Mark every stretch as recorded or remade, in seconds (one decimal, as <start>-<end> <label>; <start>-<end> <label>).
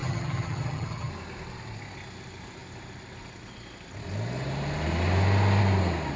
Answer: 0.0-1.1 remade; 1.1-6.2 recorded